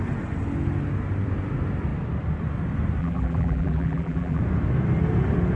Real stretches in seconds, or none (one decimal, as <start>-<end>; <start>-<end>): 0.0-3.0; 4.4-5.6